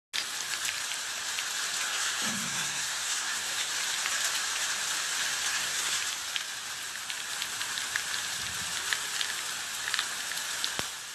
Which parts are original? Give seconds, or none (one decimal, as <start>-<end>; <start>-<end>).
0.0-1.9; 3.7-5.5; 6.0-11.1